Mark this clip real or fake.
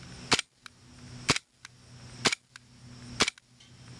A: real